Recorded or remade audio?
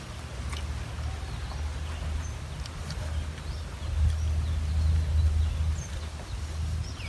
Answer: recorded